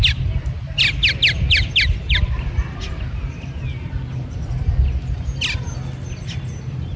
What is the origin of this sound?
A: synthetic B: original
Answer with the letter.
B